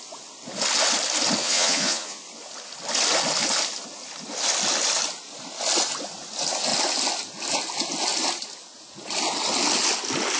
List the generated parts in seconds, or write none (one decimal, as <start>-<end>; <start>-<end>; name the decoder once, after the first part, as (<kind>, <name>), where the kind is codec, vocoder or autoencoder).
1.4-2.2 (vocoder, Vocos)